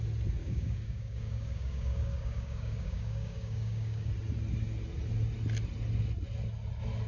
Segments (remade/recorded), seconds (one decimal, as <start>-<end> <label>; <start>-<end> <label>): 0.0-0.4 recorded; 0.4-4.1 remade; 4.1-7.1 recorded